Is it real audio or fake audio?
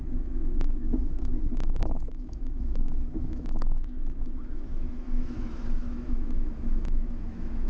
fake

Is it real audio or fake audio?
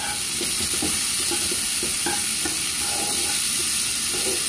real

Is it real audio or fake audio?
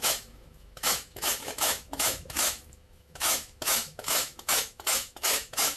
fake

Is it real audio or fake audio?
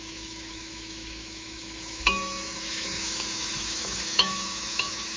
fake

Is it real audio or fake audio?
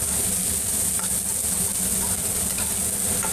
real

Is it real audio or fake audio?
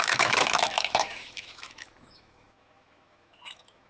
fake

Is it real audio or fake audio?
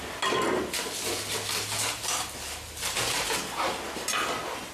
real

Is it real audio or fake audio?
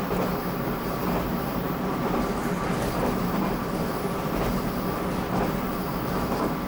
real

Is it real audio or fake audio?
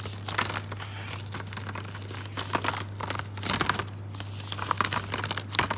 real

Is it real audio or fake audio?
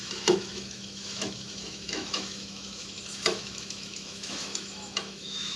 fake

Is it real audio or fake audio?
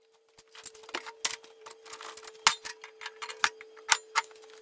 real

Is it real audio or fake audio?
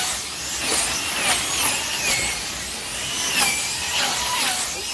real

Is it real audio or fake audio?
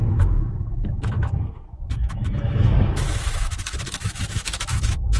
fake